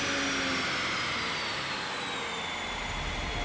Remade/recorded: recorded